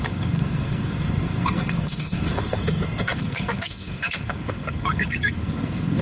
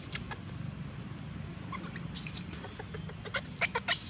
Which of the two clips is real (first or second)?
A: second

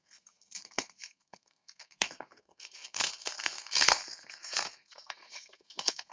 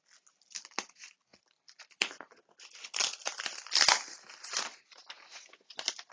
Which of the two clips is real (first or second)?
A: second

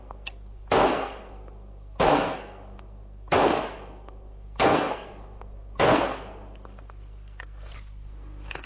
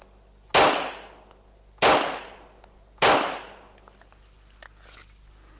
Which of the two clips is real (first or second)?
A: second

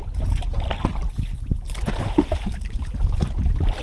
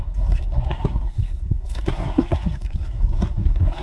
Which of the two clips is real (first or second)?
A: first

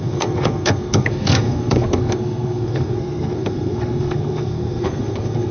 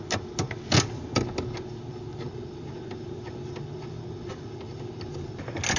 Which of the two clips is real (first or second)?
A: second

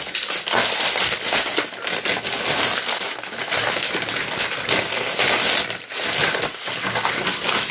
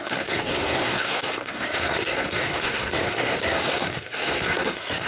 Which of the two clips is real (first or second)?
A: first